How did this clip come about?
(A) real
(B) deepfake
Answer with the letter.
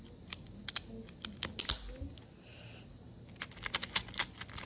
A